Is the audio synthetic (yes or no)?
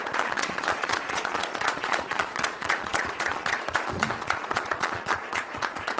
yes